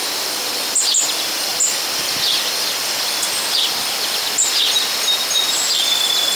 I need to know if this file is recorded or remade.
recorded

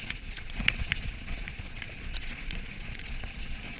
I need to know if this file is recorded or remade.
remade